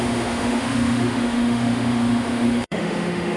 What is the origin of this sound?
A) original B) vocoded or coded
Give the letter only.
B